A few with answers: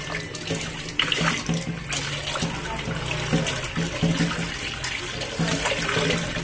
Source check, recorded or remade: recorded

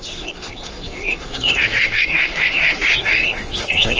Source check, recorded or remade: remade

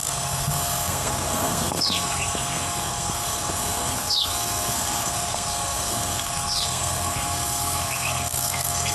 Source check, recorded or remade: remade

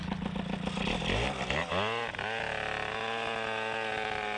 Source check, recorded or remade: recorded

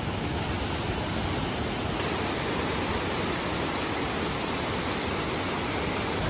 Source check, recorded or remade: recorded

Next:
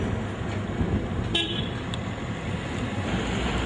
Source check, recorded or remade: recorded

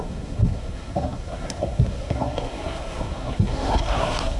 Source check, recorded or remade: remade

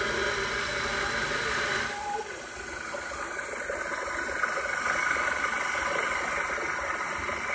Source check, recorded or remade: recorded